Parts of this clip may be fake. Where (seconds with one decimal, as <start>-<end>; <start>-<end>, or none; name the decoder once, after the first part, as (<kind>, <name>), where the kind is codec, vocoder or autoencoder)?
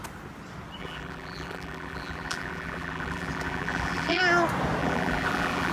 0.8-4.2 (vocoder, BigVGAN v2); 4.8-5.7